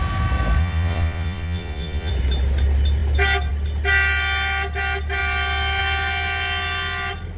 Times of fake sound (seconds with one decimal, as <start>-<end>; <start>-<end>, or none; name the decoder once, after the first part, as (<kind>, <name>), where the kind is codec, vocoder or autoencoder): 0.6-2.1 (vocoder, Vocos)